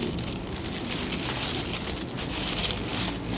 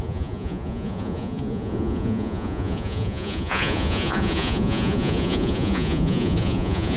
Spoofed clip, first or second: second